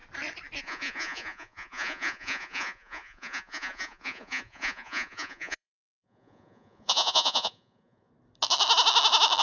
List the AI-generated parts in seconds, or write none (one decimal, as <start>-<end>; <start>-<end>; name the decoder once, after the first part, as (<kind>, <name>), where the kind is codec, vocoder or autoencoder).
0.6-8.1 (vocoder, Vocos)